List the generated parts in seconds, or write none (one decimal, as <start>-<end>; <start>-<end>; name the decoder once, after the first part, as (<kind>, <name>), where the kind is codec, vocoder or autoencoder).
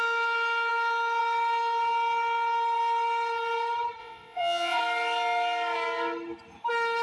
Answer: 4.0-4.8 (vocoder, WaveNeXt)